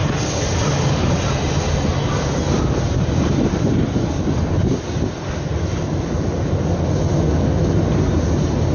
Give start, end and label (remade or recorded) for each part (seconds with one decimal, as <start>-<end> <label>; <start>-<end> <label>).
0.0-8.7 recorded